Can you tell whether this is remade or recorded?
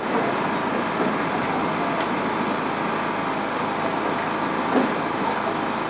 recorded